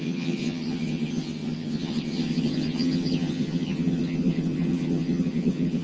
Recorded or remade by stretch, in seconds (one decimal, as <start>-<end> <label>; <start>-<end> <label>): 0.0-5.8 remade